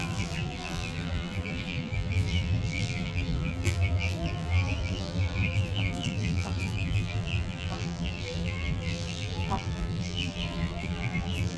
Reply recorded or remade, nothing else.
remade